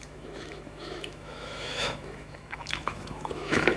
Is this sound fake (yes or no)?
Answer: yes